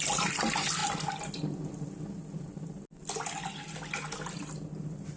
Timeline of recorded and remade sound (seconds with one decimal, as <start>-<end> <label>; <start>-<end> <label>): 0.0-5.2 recorded